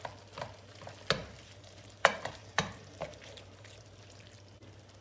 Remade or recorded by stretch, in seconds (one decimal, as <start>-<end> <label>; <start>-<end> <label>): 0.0-1.2 recorded; 1.2-4.2 remade; 4.2-5.0 recorded